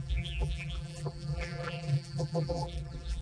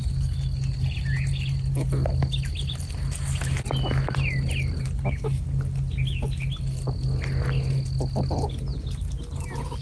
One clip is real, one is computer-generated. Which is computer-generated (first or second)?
first